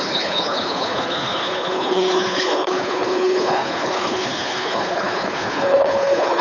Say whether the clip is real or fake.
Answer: fake